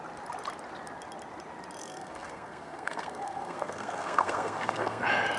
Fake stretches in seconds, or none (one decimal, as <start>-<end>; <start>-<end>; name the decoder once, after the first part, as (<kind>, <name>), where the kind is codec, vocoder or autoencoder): 1.8-5.0 (codec, SNAC)